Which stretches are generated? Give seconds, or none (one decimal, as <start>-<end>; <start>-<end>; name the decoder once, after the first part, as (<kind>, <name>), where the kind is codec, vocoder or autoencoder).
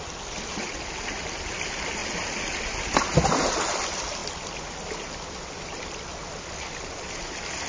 none